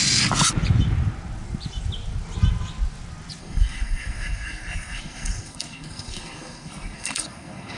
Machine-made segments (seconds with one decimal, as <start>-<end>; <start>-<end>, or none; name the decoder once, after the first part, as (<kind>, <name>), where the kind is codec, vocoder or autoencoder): 3.4-7.8 (codec, SNAC)